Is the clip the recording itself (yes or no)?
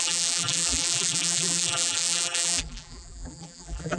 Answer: no